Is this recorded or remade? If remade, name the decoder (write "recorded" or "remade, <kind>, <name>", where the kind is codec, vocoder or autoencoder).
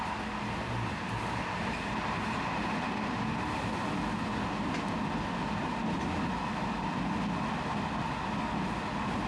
recorded